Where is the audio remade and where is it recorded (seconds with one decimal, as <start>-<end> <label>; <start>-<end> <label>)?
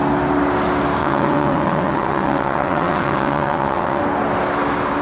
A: 0.0-1.0 recorded; 1.0-4.0 remade; 4.0-5.0 recorded